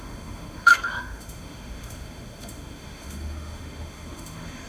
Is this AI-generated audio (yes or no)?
yes